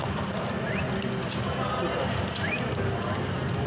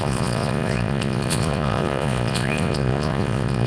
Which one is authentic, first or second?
first